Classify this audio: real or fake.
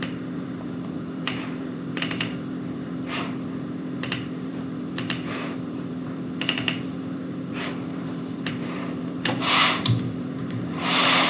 fake